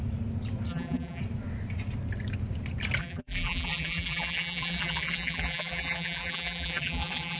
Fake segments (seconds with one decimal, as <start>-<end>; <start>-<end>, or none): 0.7-1.2; 3.0-7.4